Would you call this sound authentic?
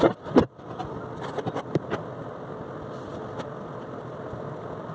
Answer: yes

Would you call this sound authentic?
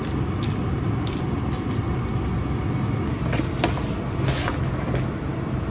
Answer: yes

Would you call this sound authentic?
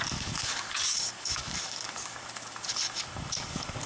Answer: no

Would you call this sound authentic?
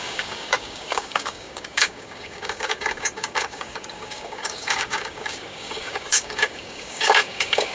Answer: no